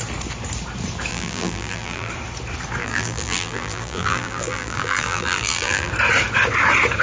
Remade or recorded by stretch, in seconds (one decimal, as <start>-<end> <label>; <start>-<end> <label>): 0.0-1.1 recorded; 1.1-2.1 remade; 2.1-2.8 recorded; 2.8-5.9 remade; 5.9-7.0 recorded